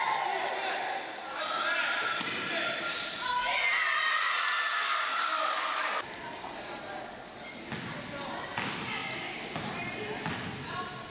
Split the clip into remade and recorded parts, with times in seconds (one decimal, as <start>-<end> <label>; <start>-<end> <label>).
0.0-4.7 recorded; 4.7-5.4 remade; 5.4-9.0 recorded; 9.0-9.5 remade; 9.5-11.1 recorded